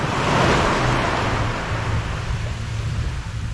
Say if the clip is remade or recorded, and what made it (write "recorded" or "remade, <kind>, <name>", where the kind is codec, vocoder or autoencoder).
recorded